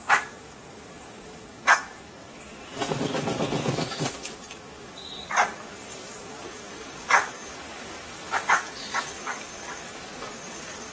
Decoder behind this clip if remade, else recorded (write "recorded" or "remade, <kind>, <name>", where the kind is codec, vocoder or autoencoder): remade, codec, DAC